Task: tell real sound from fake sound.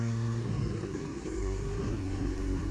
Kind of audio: fake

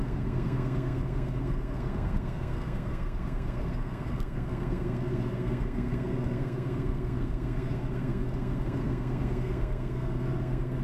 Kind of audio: fake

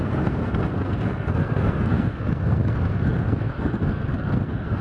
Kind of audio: fake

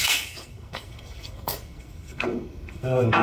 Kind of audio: fake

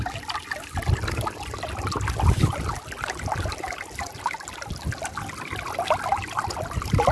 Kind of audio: real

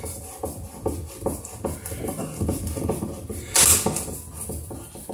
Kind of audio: real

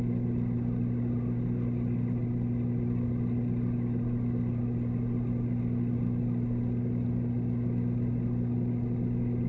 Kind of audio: real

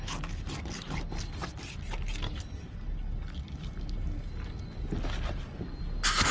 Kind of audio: real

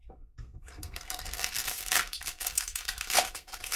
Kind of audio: fake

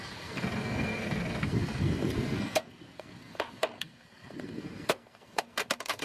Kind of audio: fake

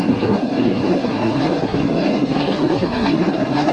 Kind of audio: fake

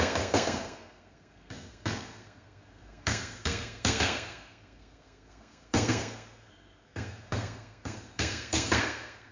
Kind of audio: fake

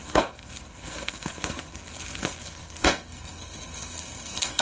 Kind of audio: fake